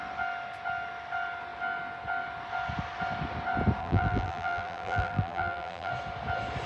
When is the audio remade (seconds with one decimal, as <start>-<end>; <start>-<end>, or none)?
3.8-5.9